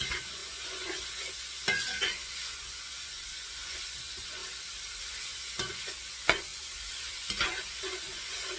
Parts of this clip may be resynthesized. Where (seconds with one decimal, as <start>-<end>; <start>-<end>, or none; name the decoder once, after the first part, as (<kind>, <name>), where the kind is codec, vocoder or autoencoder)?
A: 0.0-4.4 (vocoder, Vocos); 5.1-8.6